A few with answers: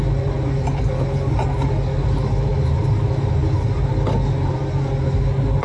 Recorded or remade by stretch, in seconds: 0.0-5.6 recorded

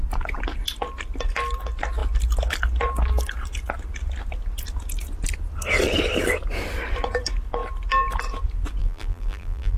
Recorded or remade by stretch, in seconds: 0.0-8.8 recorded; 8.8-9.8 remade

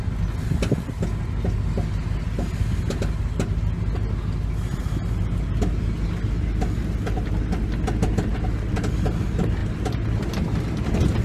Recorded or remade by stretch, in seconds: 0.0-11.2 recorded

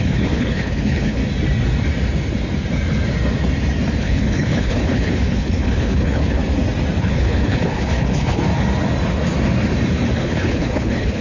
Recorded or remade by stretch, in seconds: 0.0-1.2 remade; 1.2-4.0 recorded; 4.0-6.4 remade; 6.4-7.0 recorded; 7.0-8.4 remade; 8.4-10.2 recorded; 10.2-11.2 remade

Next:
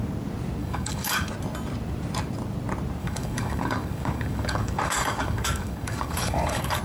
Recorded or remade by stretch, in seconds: 0.0-0.6 recorded; 0.6-1.3 remade; 1.3-3.0 recorded; 3.0-6.8 remade

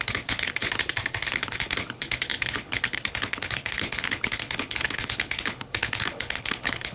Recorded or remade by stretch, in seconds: 0.0-0.6 remade; 0.6-1.3 recorded; 1.3-6.9 remade

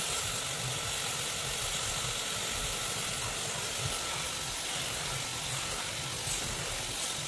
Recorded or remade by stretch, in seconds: 0.0-7.3 recorded

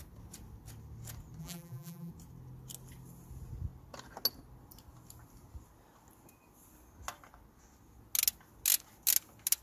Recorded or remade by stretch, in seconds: 0.0-1.4 recorded; 1.4-2.1 remade; 2.1-9.6 recorded